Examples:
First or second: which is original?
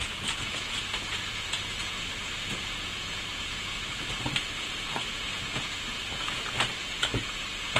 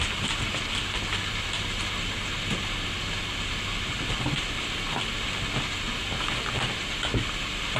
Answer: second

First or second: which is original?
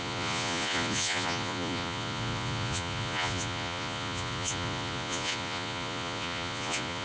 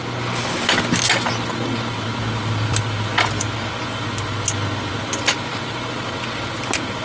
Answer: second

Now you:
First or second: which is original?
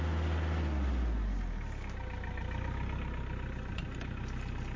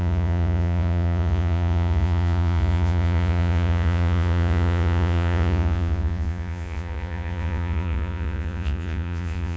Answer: first